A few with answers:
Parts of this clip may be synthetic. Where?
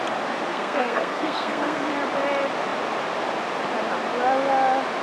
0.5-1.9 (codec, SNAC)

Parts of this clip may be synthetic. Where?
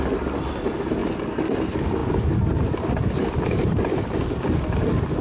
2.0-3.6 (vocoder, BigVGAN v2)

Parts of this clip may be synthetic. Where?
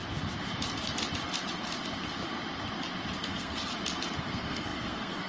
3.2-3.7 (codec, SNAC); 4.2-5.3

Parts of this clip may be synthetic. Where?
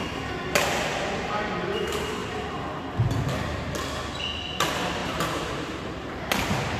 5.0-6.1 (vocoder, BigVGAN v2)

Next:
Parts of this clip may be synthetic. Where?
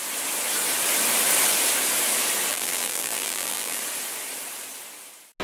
2.5-3.8 (vocoder, BigVGAN v2)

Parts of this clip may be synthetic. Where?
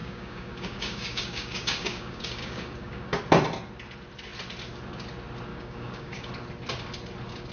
0.0-3.2 (codec, DAC); 5.5-6.3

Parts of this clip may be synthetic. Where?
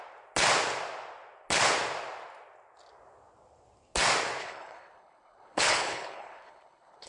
4.4-7.1 (codec, HILCodec)